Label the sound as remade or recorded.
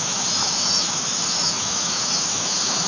remade